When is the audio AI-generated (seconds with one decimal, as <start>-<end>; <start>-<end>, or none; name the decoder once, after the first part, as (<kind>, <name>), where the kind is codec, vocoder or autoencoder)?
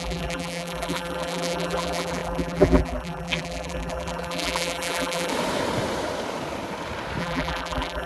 0.0-5.3 (vocoder, BigVGAN v2); 7.2-8.1